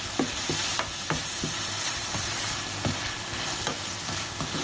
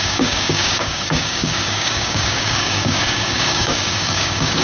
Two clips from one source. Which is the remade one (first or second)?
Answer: second